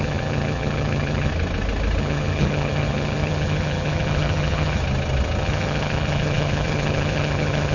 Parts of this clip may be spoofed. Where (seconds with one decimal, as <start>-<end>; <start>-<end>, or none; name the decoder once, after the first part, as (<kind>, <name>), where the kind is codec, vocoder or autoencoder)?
0.0-1.3 (vocoder, HiFi-GAN); 2.0-4.8; 5.4-7.7